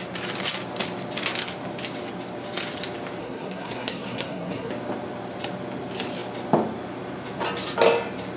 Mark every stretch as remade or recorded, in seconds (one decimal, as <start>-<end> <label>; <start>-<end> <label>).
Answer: 0.0-3.2 recorded; 3.2-4.7 remade; 4.7-8.4 recorded